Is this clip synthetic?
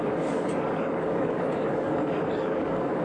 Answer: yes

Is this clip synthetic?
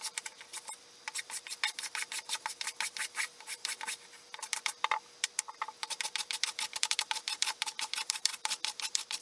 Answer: yes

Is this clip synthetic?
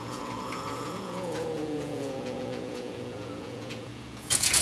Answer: yes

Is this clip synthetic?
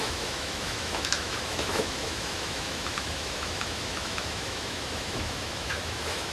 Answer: yes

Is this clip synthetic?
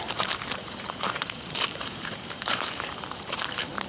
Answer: yes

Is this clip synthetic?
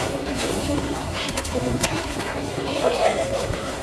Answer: yes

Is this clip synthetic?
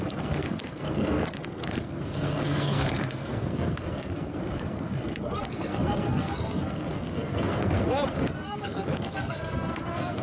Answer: yes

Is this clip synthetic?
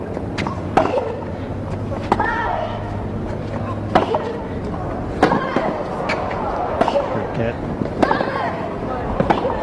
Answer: no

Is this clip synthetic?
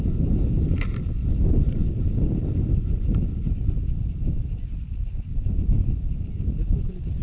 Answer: no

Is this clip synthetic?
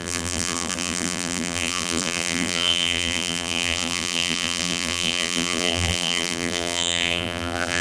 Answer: yes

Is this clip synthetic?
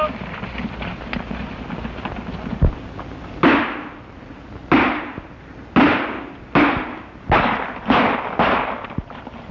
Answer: no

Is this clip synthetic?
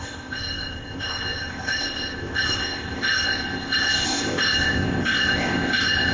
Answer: yes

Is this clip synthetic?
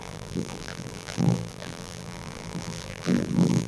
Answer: yes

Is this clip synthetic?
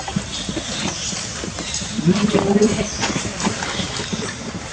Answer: yes